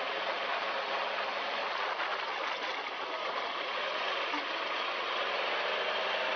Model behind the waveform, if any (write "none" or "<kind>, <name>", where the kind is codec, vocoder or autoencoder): none